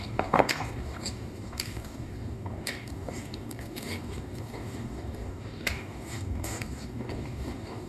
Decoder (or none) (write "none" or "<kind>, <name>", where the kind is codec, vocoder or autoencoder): codec, DAC